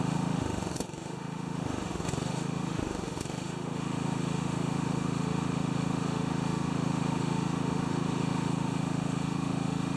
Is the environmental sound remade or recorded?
remade